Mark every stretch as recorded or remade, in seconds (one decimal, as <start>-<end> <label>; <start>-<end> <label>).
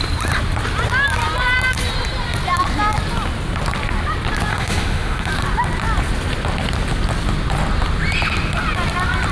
0.0-4.5 recorded; 4.5-5.3 remade; 5.3-9.3 recorded